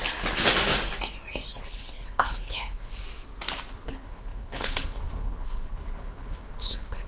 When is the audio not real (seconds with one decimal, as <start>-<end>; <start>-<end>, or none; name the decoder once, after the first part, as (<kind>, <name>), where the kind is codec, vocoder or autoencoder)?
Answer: 1.5-3.0 (codec, HILCodec); 3.7-7.1